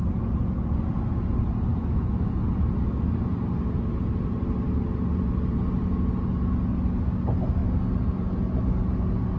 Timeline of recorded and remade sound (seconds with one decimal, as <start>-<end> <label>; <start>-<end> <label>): 0.0-1.7 recorded; 1.7-2.3 remade; 2.3-9.4 recorded